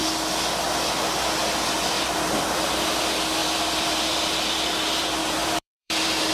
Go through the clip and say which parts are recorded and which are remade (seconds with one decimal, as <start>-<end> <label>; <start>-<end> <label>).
0.0-1.9 recorded; 1.9-6.3 remade